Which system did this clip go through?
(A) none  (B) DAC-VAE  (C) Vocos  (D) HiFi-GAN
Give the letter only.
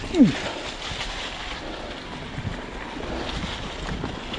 A